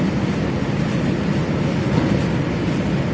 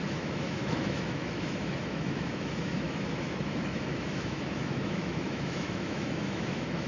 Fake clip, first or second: second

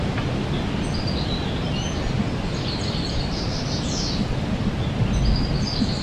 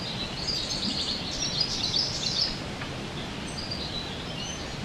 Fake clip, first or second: second